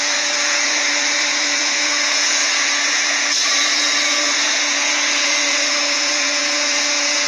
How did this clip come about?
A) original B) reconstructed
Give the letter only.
B